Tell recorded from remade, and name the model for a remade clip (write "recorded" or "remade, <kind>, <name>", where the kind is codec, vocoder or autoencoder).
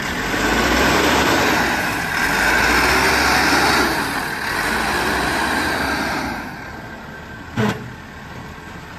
recorded